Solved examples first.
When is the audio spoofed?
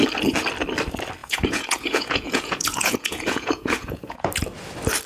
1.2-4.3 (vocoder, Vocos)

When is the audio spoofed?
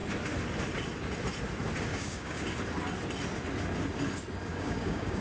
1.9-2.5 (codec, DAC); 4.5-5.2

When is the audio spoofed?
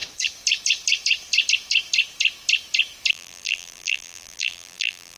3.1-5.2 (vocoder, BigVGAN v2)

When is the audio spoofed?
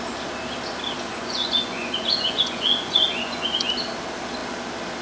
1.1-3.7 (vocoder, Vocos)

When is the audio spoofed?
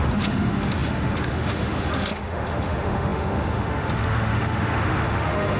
0.0-5.6 (autoencoder, DAC-VAE)